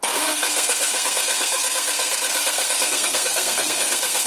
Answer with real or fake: fake